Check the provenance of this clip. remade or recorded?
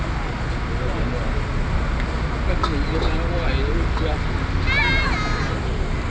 recorded